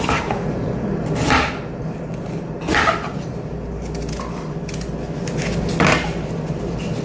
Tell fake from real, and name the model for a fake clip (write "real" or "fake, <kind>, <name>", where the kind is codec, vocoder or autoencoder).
real